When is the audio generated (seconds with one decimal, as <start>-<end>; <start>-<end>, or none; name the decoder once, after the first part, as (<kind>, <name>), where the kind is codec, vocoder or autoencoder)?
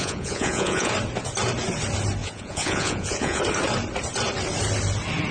0.0-0.9 (vocoder, Vocos); 2.2-3.4